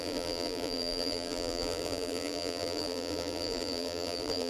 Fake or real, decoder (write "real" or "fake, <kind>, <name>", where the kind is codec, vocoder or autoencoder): fake, vocoder, BigVGAN v2